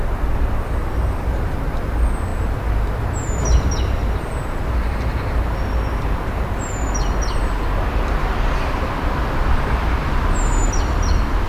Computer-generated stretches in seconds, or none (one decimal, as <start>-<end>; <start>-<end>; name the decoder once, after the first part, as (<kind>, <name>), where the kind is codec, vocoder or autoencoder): none